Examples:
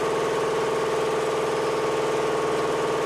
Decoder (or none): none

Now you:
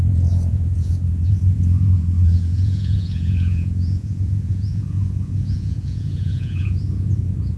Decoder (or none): vocoder, Vocos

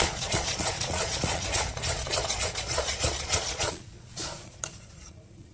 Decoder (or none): vocoder, Vocos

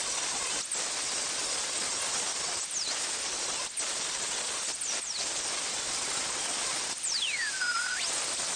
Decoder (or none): none